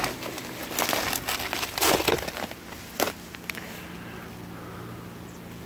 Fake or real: real